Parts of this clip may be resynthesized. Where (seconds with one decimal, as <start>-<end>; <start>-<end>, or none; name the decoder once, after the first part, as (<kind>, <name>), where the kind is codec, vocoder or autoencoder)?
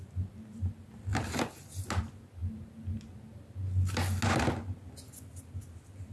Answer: none